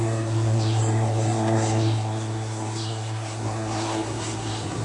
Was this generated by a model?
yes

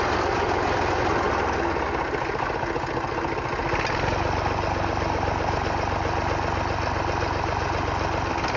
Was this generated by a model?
no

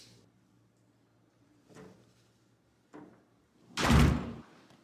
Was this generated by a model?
no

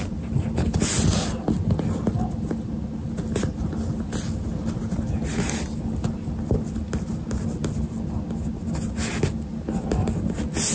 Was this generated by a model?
no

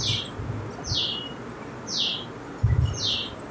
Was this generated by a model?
no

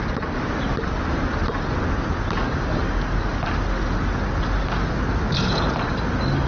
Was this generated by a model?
no